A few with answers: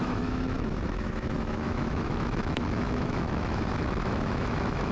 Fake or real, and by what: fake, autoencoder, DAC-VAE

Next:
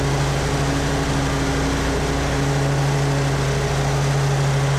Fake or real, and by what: real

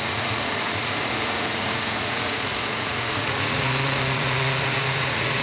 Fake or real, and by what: fake, vocoder, Vocos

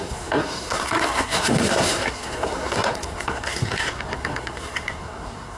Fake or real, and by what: fake, codec, SNAC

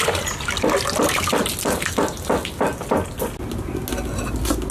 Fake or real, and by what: real